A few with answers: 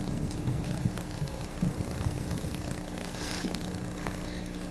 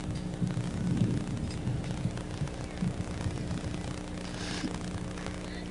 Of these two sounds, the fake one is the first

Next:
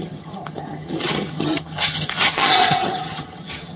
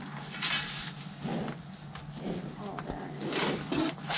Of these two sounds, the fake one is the first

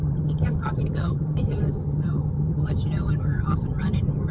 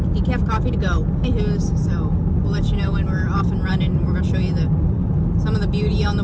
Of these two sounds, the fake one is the first